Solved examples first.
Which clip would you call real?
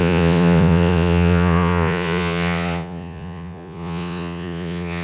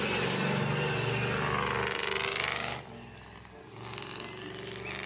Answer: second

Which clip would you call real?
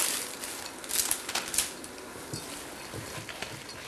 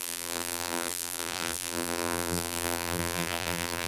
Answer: first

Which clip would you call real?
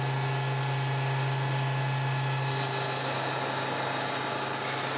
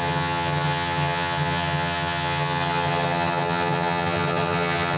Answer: first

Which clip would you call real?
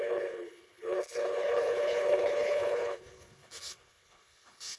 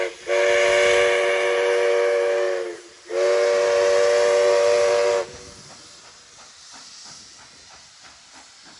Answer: second